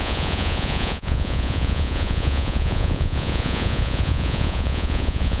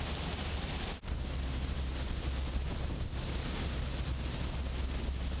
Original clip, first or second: second